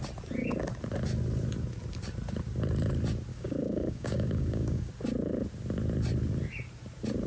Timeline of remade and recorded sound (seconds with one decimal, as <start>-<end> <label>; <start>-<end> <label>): 0.0-3.3 recorded; 3.3-4.9 remade; 4.9-7.3 recorded